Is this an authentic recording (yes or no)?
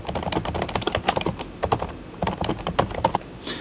yes